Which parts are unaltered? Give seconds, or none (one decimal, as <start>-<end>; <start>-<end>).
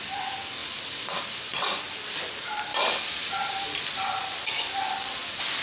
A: 0.0-0.6; 1.8-2.7; 5.1-5.6